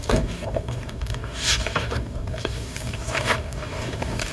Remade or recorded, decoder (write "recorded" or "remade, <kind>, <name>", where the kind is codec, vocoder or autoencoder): remade, codec, DAC